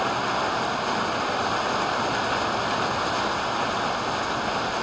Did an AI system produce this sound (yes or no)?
no